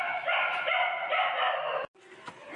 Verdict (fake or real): real